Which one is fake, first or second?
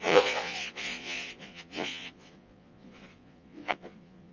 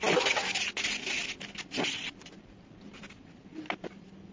first